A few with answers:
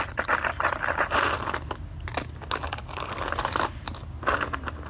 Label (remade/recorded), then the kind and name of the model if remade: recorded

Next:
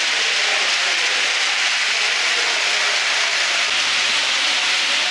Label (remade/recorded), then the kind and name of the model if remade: recorded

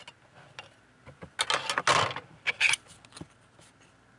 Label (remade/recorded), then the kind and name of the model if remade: recorded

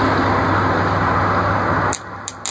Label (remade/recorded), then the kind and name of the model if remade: recorded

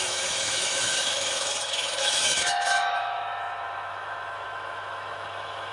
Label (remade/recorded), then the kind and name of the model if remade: remade, autoencoder, DAC-VAE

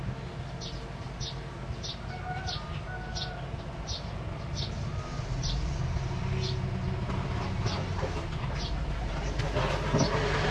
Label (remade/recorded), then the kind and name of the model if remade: recorded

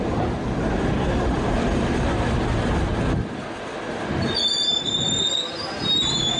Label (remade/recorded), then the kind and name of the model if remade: recorded